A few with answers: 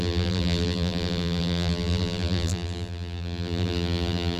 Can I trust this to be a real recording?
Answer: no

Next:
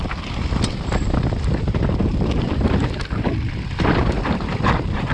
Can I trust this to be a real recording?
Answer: no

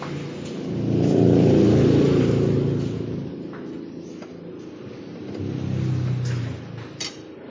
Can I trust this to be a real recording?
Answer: yes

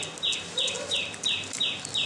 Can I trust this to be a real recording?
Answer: yes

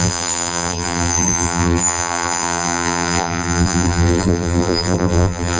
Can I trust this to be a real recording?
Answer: no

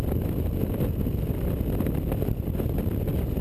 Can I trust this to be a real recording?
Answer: yes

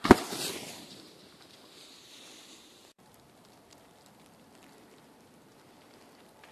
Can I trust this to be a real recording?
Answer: no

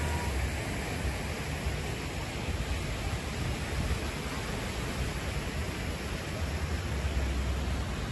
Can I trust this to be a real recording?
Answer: yes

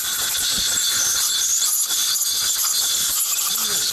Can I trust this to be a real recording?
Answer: yes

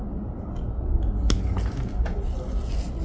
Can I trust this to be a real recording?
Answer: yes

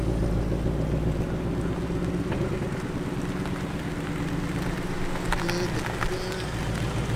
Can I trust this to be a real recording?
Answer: yes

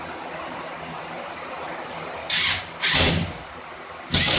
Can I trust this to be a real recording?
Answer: yes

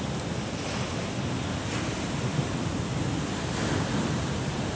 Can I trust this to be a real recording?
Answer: no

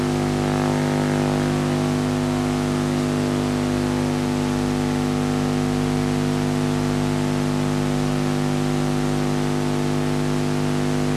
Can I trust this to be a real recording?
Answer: yes